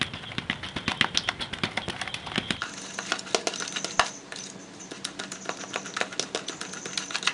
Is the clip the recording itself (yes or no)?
yes